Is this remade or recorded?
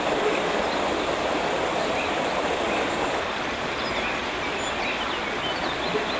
recorded